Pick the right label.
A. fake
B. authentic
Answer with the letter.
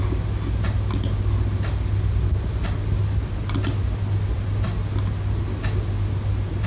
B